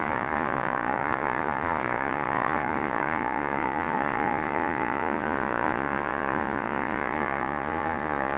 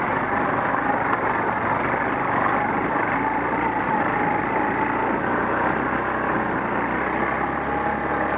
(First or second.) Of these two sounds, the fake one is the first